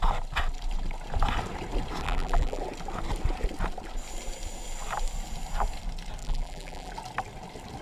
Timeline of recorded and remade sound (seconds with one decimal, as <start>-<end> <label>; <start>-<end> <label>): 0.0-2.0 recorded; 2.0-2.6 remade; 2.6-6.2 recorded; 6.2-6.9 remade; 6.9-7.8 recorded